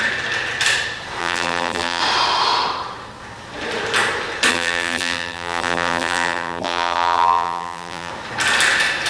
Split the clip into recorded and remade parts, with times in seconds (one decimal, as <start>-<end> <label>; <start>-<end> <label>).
0.0-1.2 recorded; 1.2-2.0 remade; 2.0-4.5 recorded; 4.5-8.1 remade; 8.1-9.1 recorded